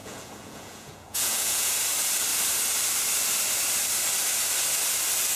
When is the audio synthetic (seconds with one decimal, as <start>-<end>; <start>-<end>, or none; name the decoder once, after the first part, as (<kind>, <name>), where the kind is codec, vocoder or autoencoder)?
0.0-1.7 (vocoder, Vocos)